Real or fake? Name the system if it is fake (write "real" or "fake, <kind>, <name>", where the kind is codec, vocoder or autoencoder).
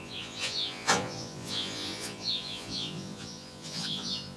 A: fake, vocoder, Vocos